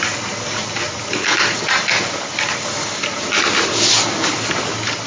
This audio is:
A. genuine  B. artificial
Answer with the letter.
A